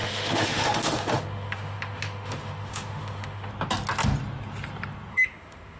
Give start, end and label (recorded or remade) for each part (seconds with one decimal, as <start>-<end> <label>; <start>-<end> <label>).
0.0-3.5 remade; 3.5-5.1 recorded; 5.1-5.8 remade